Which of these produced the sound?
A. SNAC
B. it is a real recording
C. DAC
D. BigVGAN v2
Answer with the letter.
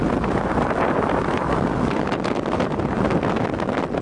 B